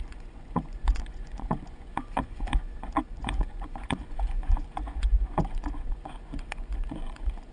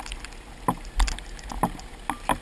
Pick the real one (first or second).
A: second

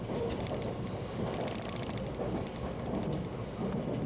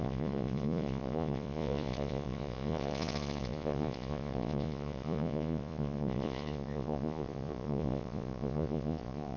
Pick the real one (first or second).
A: first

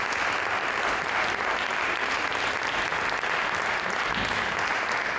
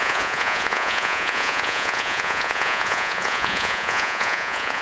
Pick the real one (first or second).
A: first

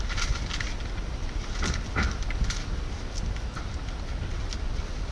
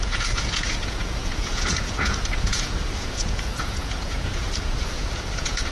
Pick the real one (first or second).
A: first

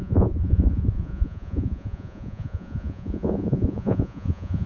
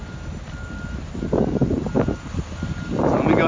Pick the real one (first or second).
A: second